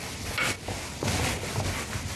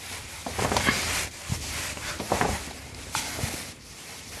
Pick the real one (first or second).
first